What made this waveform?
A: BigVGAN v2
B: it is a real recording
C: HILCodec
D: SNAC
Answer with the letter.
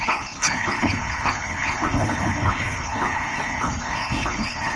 C